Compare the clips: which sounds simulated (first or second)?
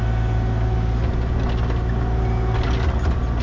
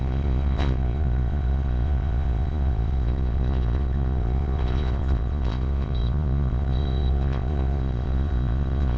second